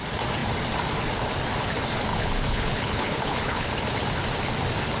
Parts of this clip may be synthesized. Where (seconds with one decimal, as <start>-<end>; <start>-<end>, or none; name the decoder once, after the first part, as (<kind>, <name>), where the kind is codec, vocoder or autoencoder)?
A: 2.1-3.7 (codec, HILCodec)